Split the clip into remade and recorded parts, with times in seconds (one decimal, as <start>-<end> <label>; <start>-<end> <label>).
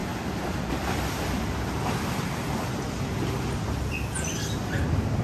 0.0-5.2 recorded